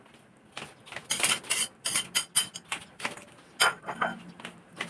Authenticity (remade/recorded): recorded